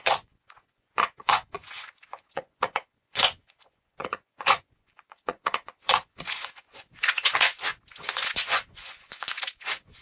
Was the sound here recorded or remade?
remade